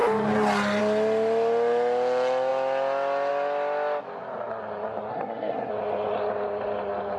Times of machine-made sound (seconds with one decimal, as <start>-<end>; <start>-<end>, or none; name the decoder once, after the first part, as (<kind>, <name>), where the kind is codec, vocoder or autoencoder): 5.1-5.7 (codec, SNAC)